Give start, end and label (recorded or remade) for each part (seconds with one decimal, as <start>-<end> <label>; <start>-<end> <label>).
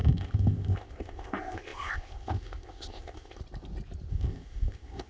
0.0-3.4 remade; 3.4-4.1 recorded; 4.1-5.1 remade